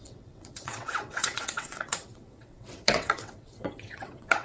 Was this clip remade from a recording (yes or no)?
yes